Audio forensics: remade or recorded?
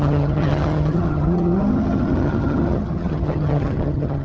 remade